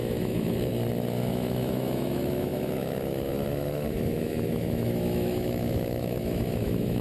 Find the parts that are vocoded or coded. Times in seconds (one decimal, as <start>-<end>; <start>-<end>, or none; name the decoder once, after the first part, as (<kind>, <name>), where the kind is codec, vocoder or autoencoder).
0.0-0.7 (autoencoder, DAC-VAE); 1.3-7.0